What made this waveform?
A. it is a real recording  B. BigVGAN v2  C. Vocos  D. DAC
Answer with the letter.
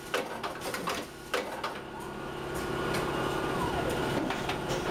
A